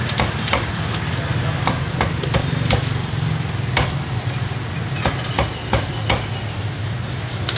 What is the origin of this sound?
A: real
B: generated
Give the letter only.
A